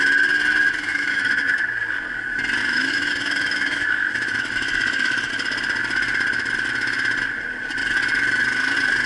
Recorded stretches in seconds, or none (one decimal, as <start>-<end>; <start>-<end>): 0.0-0.9; 1.6-2.6; 5.3-9.1